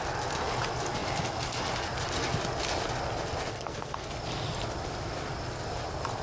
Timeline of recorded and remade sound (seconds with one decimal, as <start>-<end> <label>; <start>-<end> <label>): 0.0-3.5 recorded; 3.5-4.1 remade; 4.1-6.2 recorded